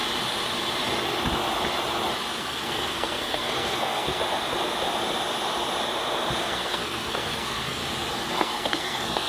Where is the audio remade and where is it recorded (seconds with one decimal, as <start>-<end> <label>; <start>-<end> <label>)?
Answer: 0.0-2.4 recorded; 2.4-4.2 remade; 4.2-6.4 recorded; 6.4-7.8 remade; 7.8-8.3 recorded; 8.3-9.3 remade